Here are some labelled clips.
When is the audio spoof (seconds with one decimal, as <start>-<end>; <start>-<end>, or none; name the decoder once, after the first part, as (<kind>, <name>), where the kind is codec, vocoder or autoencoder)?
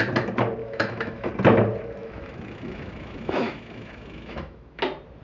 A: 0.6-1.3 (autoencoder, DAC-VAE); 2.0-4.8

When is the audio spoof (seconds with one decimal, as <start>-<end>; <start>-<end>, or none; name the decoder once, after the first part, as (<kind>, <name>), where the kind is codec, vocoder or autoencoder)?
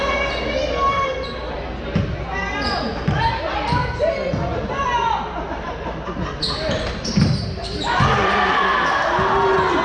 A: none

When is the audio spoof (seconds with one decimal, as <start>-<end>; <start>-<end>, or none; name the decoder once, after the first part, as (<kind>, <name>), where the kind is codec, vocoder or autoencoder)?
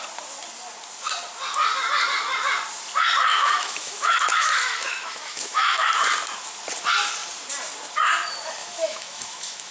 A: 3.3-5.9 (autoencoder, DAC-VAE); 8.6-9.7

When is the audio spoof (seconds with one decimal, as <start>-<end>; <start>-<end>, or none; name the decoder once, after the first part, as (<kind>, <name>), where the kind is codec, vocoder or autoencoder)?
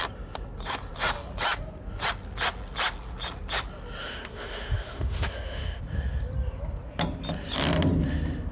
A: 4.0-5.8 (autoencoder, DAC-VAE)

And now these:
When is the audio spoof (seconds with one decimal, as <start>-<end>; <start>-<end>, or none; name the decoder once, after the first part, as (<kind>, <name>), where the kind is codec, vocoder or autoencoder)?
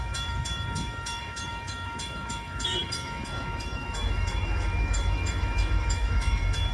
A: 0.0-6.7 (autoencoder, DAC-VAE)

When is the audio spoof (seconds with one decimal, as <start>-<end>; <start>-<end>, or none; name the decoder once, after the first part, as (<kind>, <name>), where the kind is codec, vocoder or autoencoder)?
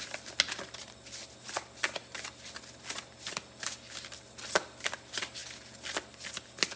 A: none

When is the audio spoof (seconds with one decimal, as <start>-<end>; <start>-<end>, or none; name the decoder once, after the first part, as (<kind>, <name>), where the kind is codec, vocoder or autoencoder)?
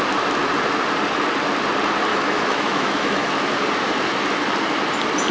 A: 2.1-3.3 (autoencoder, DAC-VAE)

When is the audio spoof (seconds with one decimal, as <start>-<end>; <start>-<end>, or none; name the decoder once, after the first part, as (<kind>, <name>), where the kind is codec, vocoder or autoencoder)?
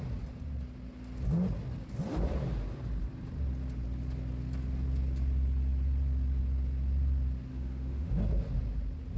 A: 7.5-8.2 (autoencoder, DAC-VAE)